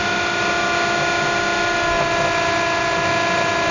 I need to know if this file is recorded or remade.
recorded